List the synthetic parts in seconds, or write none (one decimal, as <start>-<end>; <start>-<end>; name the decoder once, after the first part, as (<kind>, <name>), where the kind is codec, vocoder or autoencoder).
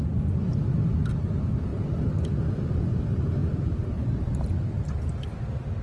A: 1.7-2.2 (vocoder, BigVGAN v2); 3.4-4.5